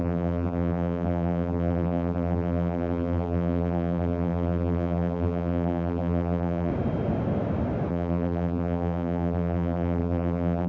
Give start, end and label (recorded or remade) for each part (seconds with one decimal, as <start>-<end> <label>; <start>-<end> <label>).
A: 0.0-6.7 remade; 6.7-7.9 recorded; 7.9-10.7 remade